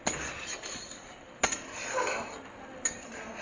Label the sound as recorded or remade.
recorded